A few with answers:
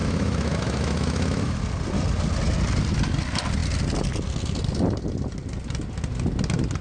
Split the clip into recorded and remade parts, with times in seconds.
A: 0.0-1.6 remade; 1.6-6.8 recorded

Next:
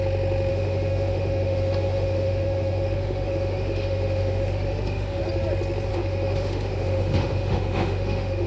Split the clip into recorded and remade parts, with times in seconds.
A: 0.0-0.5 recorded; 0.5-5.2 remade; 5.2-5.9 recorded; 5.9-8.5 remade